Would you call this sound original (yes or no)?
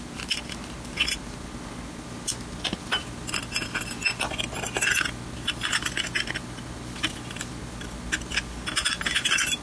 yes